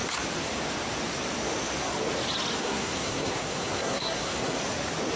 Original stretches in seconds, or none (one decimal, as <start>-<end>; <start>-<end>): 0.0-2.6; 4.6-5.2